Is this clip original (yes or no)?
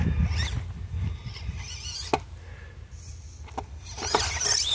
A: yes